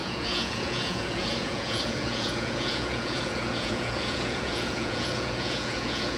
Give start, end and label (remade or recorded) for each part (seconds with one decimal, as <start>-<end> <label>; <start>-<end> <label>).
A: 0.0-6.2 remade